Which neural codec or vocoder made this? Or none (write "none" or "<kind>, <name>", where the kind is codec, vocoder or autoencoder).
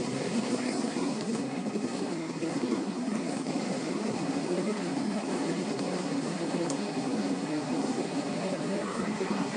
codec, SNAC